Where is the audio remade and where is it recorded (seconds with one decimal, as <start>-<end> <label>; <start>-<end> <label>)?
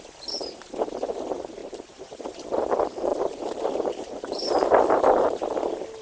0.0-1.6 recorded; 1.6-2.3 remade; 2.3-3.1 recorded; 3.1-5.5 remade; 5.5-6.0 recorded